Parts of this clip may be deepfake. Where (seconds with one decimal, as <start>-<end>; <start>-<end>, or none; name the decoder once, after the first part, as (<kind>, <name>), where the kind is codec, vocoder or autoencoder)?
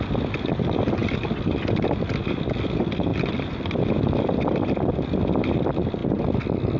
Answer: none